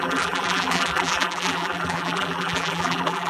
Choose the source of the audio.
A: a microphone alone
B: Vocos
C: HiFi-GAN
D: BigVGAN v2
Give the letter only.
D